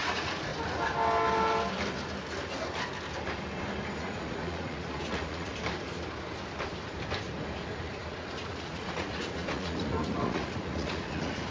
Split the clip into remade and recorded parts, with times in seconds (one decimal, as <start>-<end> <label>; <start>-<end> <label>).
0.0-0.5 remade; 0.5-4.0 recorded; 4.0-5.5 remade; 5.5-7.8 recorded; 7.8-11.5 remade